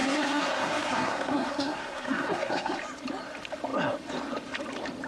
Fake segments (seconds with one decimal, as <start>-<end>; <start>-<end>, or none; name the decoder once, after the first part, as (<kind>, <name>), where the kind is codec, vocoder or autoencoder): 0.0-2.8 (codec, SNAC)